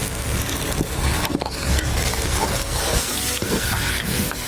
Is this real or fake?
fake